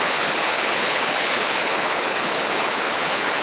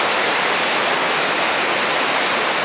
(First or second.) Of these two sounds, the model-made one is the first